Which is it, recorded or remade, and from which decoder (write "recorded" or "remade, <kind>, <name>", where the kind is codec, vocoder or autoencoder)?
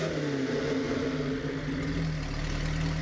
recorded